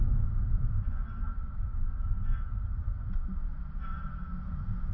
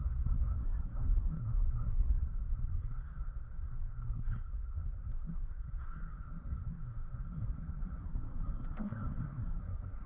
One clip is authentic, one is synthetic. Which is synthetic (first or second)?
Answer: second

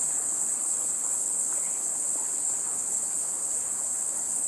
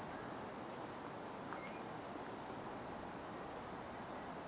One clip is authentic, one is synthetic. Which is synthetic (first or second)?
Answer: first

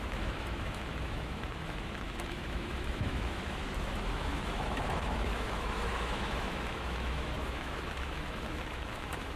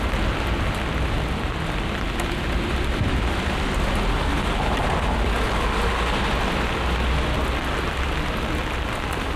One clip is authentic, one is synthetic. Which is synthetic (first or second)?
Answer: first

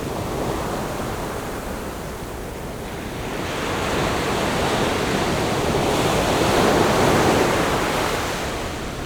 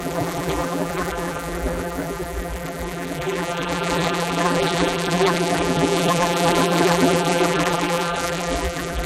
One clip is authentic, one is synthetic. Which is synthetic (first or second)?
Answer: second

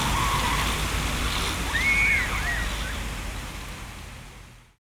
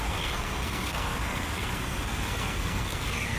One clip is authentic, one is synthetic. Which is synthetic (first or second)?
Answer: second